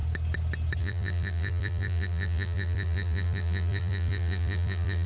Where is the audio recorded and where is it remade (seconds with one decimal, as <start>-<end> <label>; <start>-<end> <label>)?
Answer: 0.0-0.8 recorded; 0.8-5.1 remade